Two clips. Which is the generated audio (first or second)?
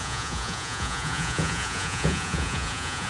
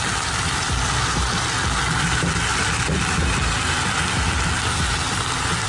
first